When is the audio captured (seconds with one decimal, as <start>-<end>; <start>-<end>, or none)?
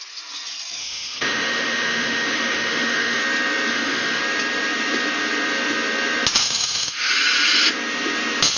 0.0-0.8; 3.2-3.7; 4.2-6.4; 7.1-8.6